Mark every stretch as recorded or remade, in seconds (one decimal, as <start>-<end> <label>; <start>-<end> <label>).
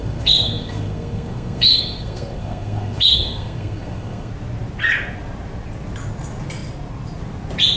0.0-4.3 remade; 4.3-7.8 recorded